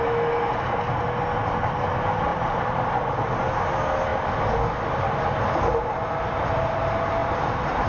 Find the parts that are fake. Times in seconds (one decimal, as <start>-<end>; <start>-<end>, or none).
2.3-3.1; 7.2-7.9